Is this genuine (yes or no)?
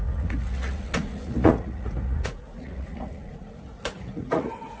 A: no